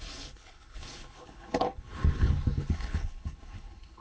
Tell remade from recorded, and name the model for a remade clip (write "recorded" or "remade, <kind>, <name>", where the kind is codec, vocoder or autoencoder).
remade, codec, HILCodec